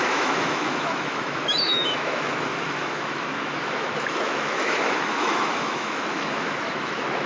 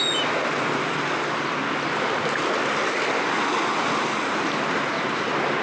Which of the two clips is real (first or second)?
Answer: second